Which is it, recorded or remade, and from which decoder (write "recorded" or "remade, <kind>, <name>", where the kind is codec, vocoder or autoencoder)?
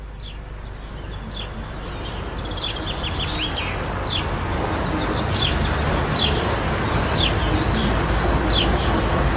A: recorded